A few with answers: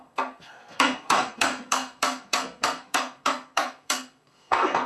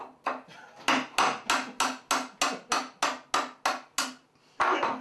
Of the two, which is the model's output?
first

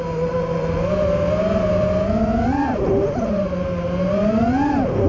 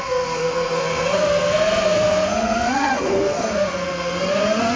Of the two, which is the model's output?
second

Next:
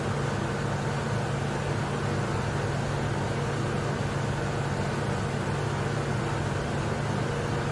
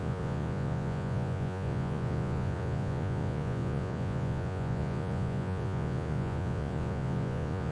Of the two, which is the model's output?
second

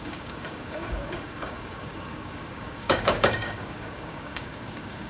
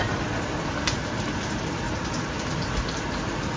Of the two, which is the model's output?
first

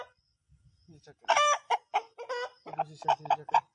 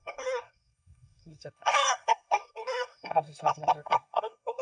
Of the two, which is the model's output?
second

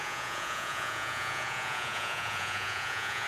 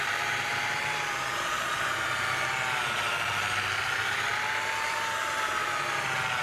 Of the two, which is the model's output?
first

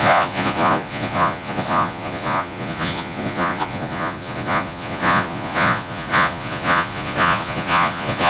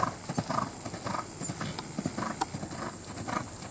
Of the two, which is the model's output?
first